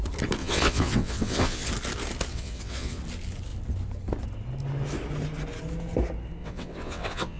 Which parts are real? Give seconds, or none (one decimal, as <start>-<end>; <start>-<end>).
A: 0.0-0.4; 1.7-2.3; 3.0-6.4